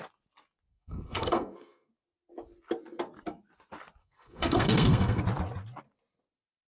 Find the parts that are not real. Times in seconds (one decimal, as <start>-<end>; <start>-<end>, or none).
0.7-1.9; 4.0-5.2